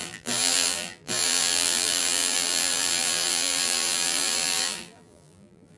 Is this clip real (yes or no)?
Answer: no